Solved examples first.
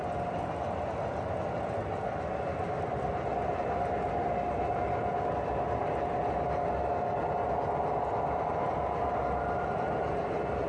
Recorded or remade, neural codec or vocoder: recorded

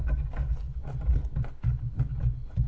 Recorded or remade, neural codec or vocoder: recorded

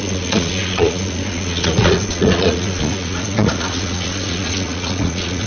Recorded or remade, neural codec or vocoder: remade, vocoder, Vocos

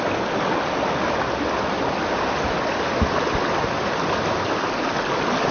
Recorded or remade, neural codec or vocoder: recorded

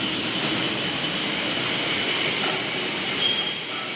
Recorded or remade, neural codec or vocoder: recorded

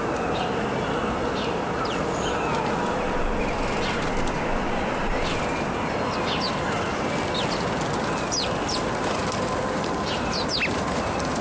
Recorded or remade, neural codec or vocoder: recorded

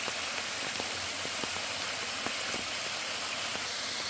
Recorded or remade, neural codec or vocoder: recorded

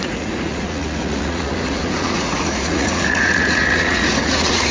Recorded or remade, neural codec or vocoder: remade, vocoder, Vocos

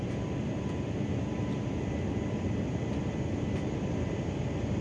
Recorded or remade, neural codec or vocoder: recorded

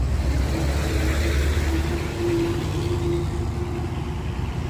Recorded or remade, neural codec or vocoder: recorded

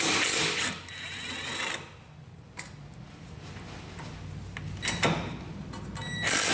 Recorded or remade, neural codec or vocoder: recorded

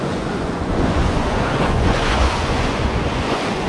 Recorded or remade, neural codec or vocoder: remade, vocoder, Vocos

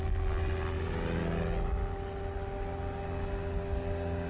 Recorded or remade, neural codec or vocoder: recorded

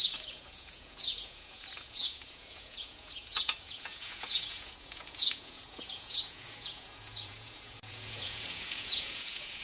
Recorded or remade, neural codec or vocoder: remade, vocoder, Vocos